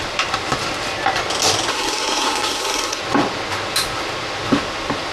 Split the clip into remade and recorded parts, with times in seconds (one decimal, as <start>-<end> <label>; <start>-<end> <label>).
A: 0.0-1.7 recorded; 1.7-3.0 remade; 3.0-5.1 recorded

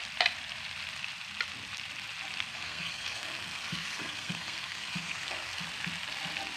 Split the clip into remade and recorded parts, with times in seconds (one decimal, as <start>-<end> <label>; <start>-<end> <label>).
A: 0.0-2.5 recorded; 2.5-5.6 remade; 5.6-6.6 recorded

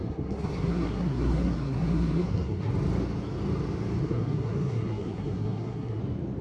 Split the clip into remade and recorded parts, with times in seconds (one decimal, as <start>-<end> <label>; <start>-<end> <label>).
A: 0.0-2.7 remade; 2.7-4.0 recorded; 4.0-6.0 remade; 6.0-6.4 recorded

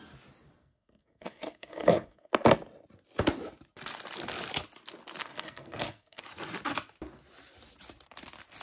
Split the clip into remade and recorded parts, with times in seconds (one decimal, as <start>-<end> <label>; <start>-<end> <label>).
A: 0.0-0.6 recorded; 0.6-2.3 remade; 2.3-5.2 recorded; 5.2-6.2 remade; 6.2-8.6 recorded

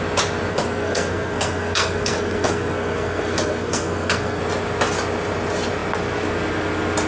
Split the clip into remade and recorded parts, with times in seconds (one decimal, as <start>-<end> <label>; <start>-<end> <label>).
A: 0.0-0.5 recorded; 0.5-4.4 remade; 4.4-7.1 recorded

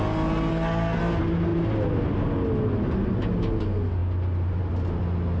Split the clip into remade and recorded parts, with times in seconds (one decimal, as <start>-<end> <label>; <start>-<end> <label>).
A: 0.0-0.5 recorded; 0.5-1.0 remade; 1.0-5.4 recorded

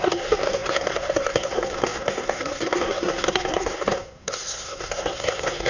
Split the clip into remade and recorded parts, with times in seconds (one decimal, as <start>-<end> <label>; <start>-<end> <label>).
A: 0.0-5.7 remade